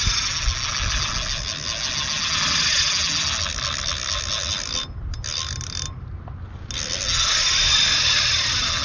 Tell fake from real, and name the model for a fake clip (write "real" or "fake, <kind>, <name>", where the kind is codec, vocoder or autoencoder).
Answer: real